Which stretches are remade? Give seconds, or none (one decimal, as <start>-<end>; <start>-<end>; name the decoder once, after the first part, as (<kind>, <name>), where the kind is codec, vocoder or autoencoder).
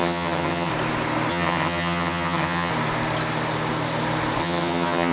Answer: 0.0-0.7 (vocoder, HiFi-GAN); 1.3-2.7; 4.4-5.1